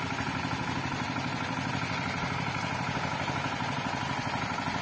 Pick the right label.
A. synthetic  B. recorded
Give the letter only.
B